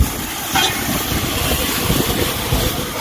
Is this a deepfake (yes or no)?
yes